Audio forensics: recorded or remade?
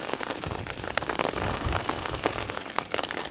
remade